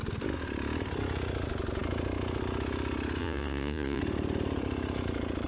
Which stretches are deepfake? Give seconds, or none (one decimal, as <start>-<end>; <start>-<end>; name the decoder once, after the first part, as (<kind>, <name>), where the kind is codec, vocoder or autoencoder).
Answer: 3.2-4.0 (vocoder, Vocos)